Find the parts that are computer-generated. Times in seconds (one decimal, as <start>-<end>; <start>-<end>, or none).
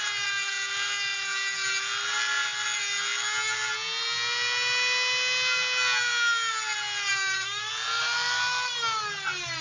7.1-7.7